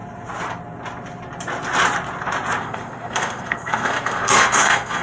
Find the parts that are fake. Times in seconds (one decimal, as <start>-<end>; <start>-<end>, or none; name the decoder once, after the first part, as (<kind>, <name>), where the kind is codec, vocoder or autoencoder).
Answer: 2.6-5.0 (codec, SNAC)